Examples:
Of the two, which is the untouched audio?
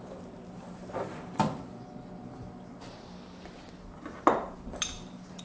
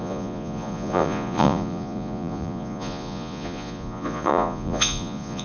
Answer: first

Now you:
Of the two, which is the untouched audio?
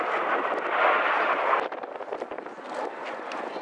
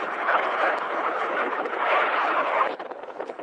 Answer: first